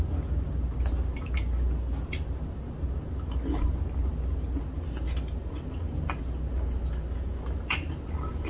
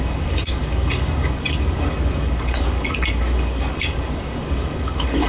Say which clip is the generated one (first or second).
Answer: second